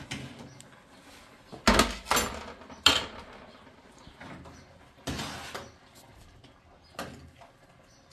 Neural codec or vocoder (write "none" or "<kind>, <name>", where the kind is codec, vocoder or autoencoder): none